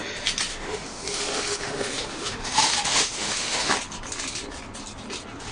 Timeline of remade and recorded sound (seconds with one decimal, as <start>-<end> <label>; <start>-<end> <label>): 0.0-0.5 recorded; 0.5-3.7 remade; 3.7-5.5 recorded